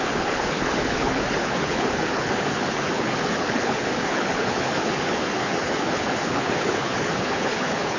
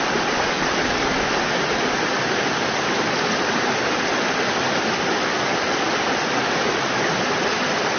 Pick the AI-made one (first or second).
first